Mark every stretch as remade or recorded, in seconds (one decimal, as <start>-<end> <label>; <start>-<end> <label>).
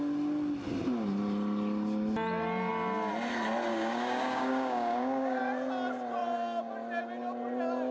0.0-3.7 recorded; 3.7-5.4 remade; 5.4-7.9 recorded